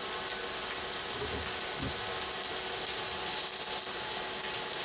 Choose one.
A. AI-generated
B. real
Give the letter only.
B